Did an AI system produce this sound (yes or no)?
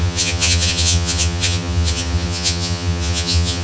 yes